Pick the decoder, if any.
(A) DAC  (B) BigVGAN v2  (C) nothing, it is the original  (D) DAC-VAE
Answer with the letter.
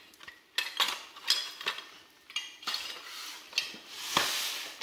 C